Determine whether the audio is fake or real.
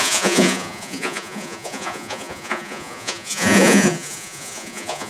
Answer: fake